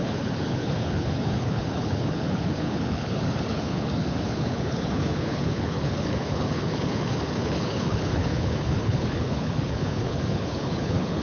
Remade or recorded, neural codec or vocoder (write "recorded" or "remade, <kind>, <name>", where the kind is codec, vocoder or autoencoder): remade, codec, HILCodec